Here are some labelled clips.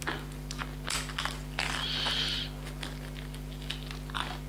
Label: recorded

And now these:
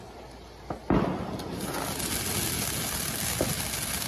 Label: recorded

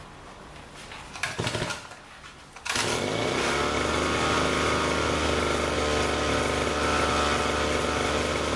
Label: recorded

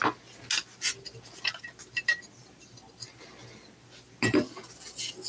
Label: recorded